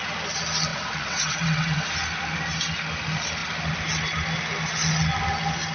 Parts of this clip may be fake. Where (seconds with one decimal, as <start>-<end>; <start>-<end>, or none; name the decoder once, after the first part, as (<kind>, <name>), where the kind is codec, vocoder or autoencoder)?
0.7-1.8 (vocoder, WaveNeXt)